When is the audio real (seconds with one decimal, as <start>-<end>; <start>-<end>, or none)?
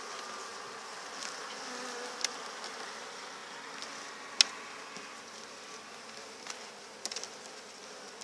0.0-8.2